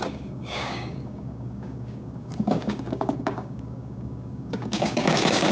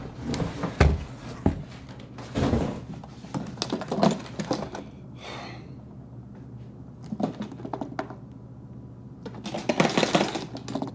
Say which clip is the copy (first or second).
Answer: first